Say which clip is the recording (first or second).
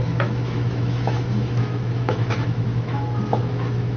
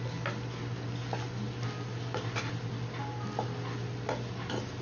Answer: second